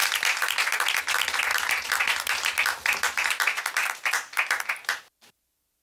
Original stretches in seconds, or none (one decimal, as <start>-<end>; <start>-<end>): 0.0-1.5; 5.0-5.8